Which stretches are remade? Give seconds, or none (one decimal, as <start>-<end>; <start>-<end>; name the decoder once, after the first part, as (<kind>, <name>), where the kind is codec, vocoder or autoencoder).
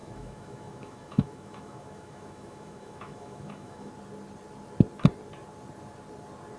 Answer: 0.0-3.9 (autoencoder, DAC-VAE)